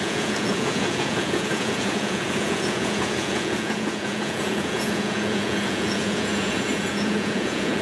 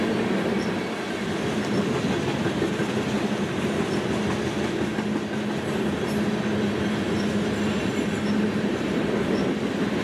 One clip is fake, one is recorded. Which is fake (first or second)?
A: first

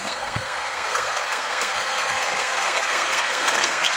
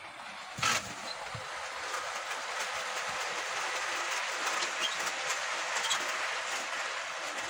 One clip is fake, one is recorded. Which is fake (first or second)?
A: first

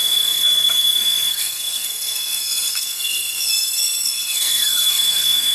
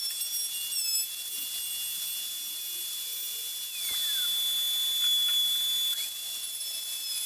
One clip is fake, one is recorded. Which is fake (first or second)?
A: first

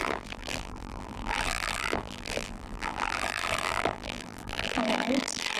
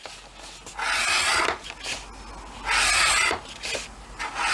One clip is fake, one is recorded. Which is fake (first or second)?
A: first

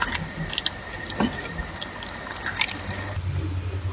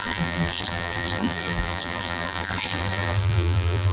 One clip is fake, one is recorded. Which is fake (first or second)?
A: second